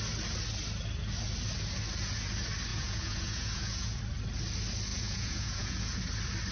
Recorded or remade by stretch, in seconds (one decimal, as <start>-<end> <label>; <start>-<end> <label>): 0.0-2.7 recorded; 2.7-4.0 remade; 4.0-4.9 recorded; 4.9-6.0 remade; 6.0-6.5 recorded